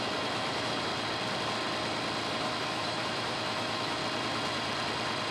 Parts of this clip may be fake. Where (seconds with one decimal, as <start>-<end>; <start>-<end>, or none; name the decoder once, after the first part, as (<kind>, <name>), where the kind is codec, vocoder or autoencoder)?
0.0-0.9 (autoencoder, DAC-VAE); 2.3-4.0